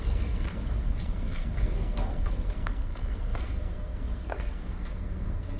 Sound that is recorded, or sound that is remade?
remade